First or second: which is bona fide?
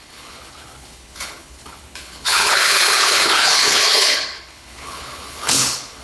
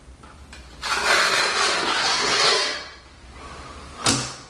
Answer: second